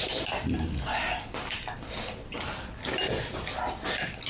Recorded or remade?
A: recorded